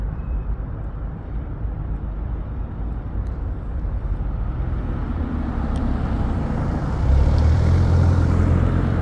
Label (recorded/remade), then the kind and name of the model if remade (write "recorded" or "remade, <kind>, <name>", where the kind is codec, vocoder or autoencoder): remade, vocoder, BigVGAN v2